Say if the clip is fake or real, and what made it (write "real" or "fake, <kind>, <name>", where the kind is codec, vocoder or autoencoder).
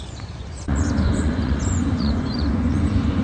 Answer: fake, vocoder, Vocos